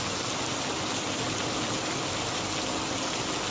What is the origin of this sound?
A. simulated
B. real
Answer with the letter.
B